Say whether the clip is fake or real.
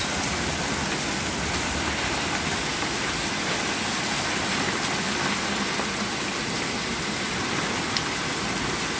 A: real